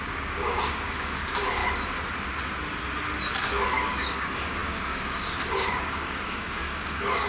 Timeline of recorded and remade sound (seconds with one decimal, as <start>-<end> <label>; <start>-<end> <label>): 0.0-1.6 remade; 1.6-3.5 recorded; 3.5-7.3 remade